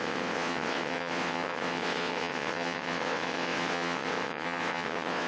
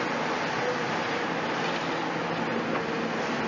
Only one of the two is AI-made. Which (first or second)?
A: first